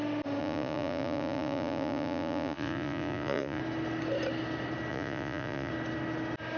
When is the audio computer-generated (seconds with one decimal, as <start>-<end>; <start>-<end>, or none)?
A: 0.4-3.6; 4.9-5.7